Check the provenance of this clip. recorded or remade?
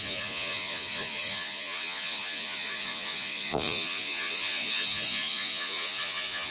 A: remade